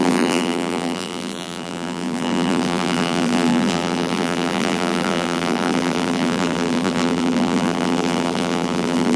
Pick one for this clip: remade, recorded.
remade